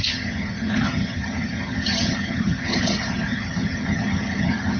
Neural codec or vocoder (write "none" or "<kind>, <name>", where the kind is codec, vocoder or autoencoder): vocoder, HiFi-GAN